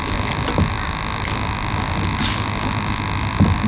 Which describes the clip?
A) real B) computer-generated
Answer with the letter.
A